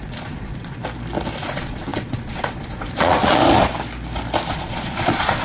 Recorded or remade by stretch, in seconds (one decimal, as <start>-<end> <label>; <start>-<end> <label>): 0.0-0.8 remade; 0.8-1.4 recorded; 1.4-3.4 remade; 3.4-4.5 recorded; 4.5-5.4 remade